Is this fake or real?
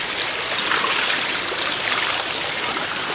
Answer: real